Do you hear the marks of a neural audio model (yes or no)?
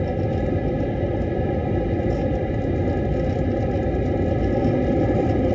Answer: no